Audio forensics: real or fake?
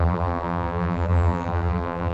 fake